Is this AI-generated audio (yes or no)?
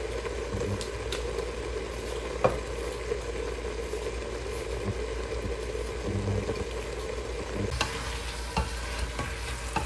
no